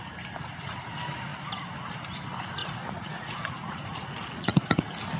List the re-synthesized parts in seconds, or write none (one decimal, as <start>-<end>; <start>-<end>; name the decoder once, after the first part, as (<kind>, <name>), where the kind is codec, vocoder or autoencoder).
2.6-4.8 (vocoder, Vocos)